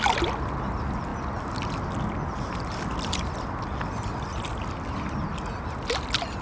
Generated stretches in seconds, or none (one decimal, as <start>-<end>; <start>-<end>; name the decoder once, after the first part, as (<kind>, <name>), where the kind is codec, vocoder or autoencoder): none